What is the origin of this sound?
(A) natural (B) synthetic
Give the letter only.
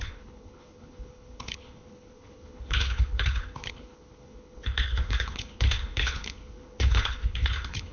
B